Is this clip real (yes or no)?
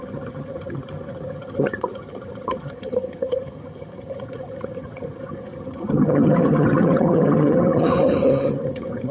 no